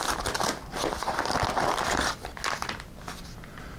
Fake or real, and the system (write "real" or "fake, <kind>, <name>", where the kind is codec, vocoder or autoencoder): real